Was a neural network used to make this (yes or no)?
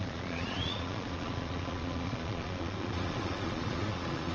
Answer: yes